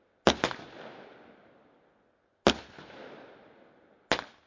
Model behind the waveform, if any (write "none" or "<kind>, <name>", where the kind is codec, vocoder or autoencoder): none